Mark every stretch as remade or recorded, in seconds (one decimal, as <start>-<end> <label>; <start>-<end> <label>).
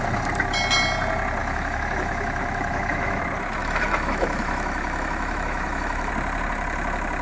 0.0-1.4 recorded; 1.4-3.2 remade; 3.2-3.6 recorded; 3.6-6.1 remade; 6.1-7.2 recorded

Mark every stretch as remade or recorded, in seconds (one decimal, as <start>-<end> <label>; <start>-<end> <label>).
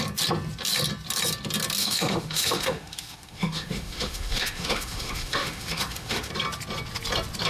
0.0-1.8 recorded; 1.8-6.3 remade; 6.3-7.5 recorded